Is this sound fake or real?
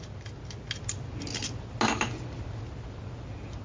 real